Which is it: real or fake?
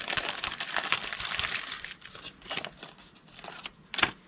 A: fake